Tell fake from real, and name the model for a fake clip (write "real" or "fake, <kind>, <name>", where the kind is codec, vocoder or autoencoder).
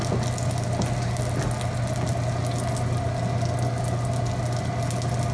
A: real